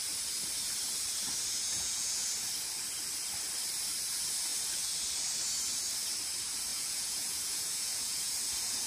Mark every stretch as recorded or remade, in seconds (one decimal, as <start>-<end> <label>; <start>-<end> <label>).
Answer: 0.0-1.7 recorded; 1.7-2.3 remade; 2.3-6.7 recorded; 6.7-8.9 remade